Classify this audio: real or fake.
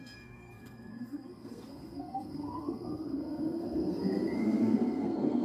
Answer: fake